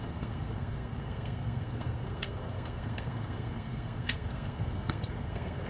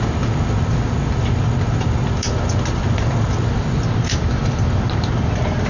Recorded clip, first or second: second